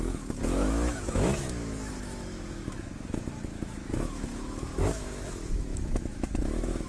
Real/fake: fake